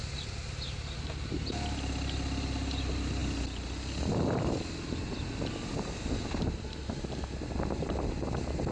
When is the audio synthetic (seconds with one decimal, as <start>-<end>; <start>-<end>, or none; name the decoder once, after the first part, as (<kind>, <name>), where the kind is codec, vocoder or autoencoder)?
none